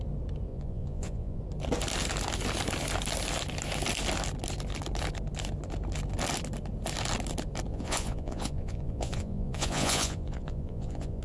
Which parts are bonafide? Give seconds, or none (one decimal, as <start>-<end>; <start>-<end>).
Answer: 0.0-0.5; 1.4-7.7